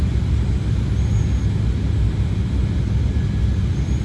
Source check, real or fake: real